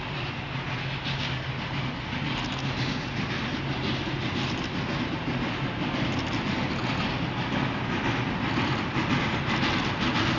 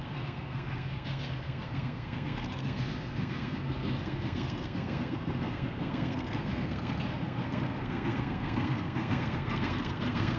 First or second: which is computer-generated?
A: second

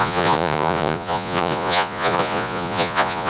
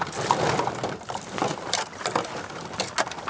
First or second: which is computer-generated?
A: first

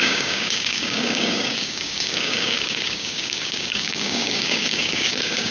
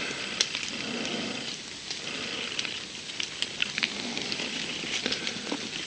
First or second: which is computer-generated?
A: first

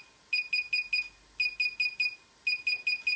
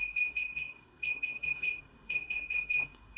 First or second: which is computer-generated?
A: second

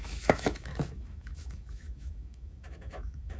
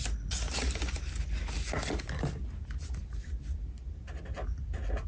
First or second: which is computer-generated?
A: first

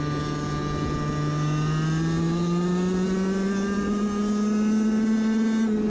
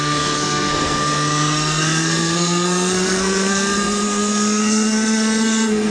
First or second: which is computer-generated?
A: second